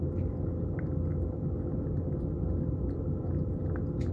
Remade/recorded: recorded